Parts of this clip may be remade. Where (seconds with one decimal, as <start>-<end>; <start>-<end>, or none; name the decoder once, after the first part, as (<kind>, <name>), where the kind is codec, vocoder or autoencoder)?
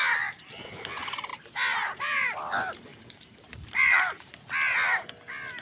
1.3-2.3 (vocoder, BigVGAN v2); 2.9-4.4